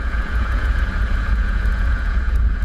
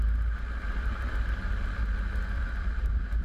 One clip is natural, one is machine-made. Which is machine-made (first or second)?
first